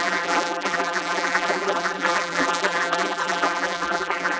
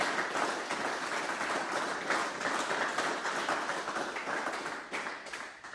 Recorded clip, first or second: second